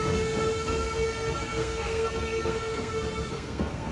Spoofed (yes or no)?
yes